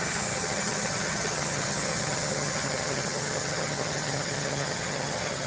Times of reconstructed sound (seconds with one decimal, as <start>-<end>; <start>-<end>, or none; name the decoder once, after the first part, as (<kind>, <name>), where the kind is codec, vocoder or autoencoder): 0.0-5.5 (vocoder, HiFi-GAN)